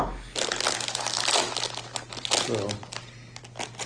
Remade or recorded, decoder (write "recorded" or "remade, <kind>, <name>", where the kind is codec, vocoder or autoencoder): recorded